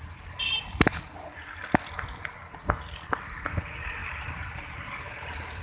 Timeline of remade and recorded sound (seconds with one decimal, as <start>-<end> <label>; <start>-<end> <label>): 0.0-1.6 remade; 1.6-3.2 recorded; 3.2-5.6 remade